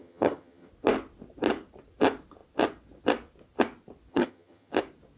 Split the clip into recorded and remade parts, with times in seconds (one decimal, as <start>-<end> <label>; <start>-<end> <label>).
0.0-0.7 remade; 0.7-4.1 recorded; 4.1-4.7 remade; 4.7-5.2 recorded